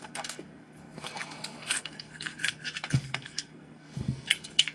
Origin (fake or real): fake